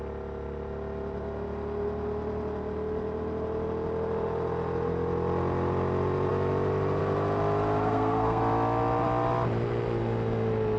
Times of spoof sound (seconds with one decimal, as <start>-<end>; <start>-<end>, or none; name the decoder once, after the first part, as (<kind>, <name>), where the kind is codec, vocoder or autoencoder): 7.8-8.4 (codec, SNAC)

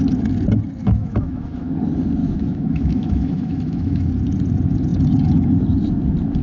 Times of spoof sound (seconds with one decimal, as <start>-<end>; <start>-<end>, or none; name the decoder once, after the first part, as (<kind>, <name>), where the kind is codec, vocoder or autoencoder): 0.8-1.7 (autoencoder, DAC-VAE); 2.2-4.1